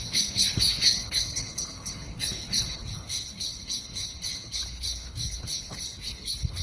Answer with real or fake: fake